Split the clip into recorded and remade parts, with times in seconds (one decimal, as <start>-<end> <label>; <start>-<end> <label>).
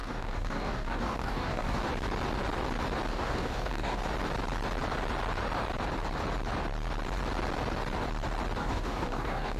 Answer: 0.0-1.8 remade; 1.8-3.1 recorded; 3.1-4.0 remade; 4.0-8.6 recorded; 8.6-9.6 remade